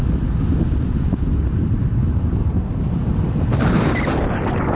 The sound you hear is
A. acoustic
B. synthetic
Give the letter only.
A